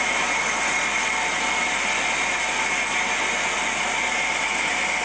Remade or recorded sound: recorded